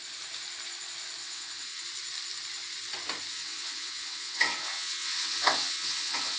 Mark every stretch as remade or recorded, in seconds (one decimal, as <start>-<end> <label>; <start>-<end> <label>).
0.0-1.2 recorded; 1.2-1.8 remade; 1.8-3.3 recorded; 3.3-6.4 remade